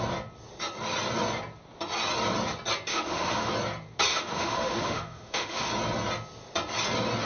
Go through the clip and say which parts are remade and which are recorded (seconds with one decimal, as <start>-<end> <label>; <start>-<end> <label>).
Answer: 0.0-2.9 recorded; 2.9-3.5 remade; 3.5-4.1 recorded; 4.1-5.7 remade; 5.7-7.3 recorded